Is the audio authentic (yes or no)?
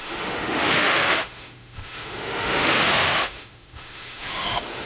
no